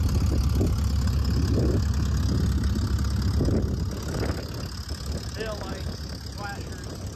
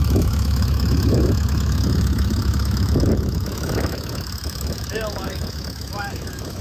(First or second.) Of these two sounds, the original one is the first